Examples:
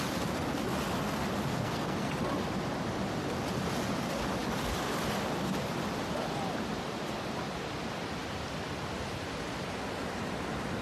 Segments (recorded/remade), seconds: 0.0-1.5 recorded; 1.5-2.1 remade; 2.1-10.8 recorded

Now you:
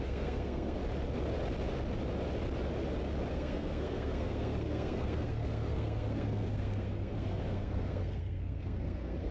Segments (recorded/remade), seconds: 0.0-0.8 remade; 0.8-3.3 recorded; 3.3-9.3 remade

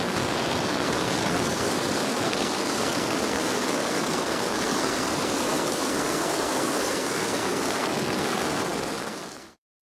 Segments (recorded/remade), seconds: 0.0-9.9 remade

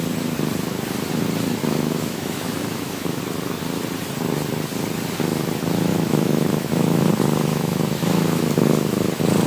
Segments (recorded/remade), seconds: 0.0-1.6 recorded; 1.6-3.2 remade; 3.2-5.9 recorded; 5.9-7.1 remade; 7.1-7.5 recorded; 7.5-8.4 remade; 8.4-9.5 recorded

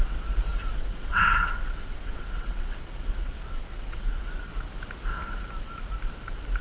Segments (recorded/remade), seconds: 0.0-0.5 recorded; 0.5-4.5 remade; 4.5-6.6 recorded